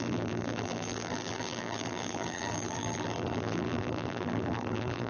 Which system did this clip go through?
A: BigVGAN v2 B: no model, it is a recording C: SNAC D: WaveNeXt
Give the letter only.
A